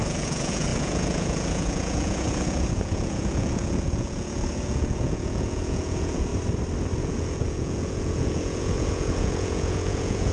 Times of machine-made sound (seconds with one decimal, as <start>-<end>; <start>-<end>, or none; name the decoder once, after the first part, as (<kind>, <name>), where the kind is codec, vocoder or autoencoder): 0.0-6.3 (vocoder, Vocos); 7.0-10.3